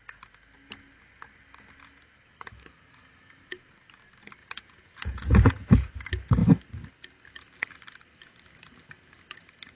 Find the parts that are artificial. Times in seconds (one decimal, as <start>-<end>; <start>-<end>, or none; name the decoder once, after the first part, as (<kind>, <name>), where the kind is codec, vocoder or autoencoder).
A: 4.4-5.9 (vocoder, Vocos)